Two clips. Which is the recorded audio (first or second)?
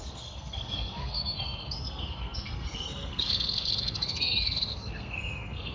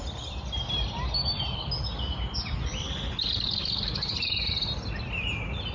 second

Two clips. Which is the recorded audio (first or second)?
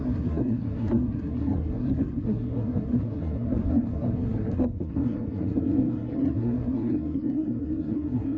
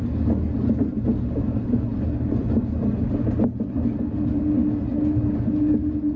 second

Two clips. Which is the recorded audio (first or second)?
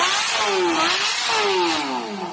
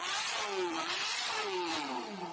first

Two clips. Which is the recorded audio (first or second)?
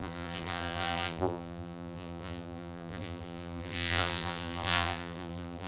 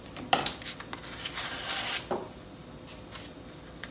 second